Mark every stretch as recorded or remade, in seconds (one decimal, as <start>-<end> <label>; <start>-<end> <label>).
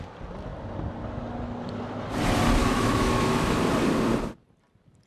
0.0-2.6 recorded; 2.6-3.6 remade; 3.6-5.1 recorded